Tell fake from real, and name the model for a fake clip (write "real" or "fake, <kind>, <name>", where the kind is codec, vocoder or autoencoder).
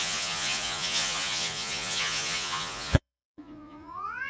fake, vocoder, Vocos